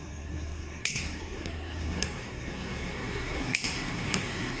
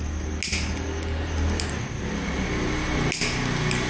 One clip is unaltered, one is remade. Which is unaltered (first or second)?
second